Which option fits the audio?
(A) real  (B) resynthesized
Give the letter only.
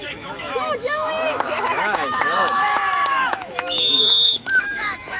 B